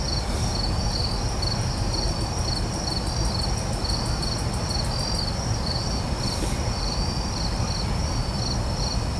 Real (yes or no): yes